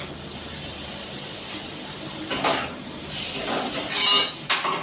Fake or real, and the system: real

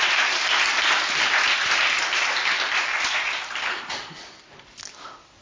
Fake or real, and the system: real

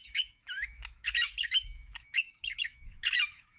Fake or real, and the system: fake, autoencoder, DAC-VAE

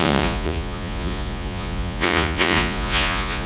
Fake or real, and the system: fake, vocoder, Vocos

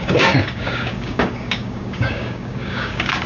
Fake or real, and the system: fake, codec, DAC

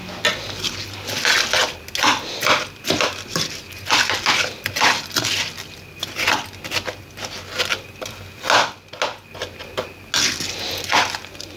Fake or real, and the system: real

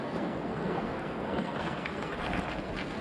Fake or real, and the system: fake, codec, SNAC